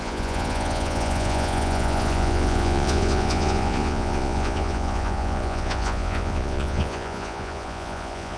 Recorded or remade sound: remade